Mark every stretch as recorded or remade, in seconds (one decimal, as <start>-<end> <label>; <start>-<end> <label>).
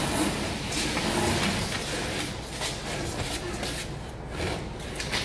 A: 0.0-5.2 recorded